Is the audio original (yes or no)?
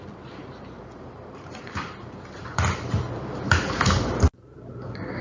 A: no